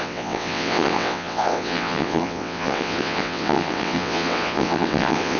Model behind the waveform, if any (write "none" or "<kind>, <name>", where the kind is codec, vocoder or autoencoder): vocoder, WaveNeXt